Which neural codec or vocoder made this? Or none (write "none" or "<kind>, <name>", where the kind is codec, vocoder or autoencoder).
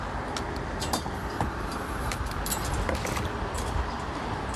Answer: none